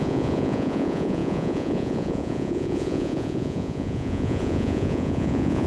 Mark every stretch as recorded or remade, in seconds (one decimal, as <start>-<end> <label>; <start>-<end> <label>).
0.0-5.7 remade